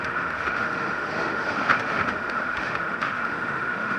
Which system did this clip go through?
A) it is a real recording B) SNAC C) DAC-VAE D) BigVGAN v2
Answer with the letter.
C